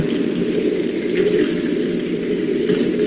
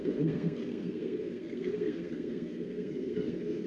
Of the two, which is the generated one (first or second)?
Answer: second